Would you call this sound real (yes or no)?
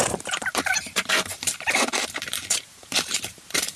no